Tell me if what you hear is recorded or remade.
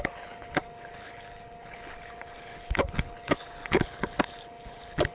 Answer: remade